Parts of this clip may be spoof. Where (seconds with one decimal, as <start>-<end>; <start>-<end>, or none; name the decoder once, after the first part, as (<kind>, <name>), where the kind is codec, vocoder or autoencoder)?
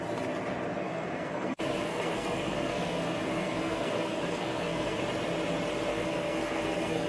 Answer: 0.7-5.0 (codec, SNAC); 5.9-7.1